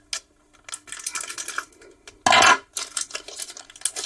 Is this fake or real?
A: real